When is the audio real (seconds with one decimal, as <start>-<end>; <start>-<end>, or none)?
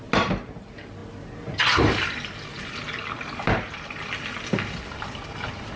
0.0-5.8